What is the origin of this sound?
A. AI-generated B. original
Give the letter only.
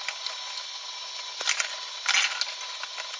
B